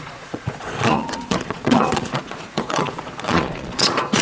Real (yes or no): no